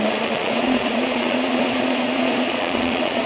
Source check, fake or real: fake